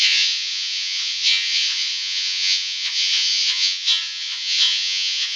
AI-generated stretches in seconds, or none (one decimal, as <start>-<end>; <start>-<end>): 0.0-5.4